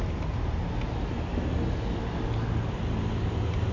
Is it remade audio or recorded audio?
recorded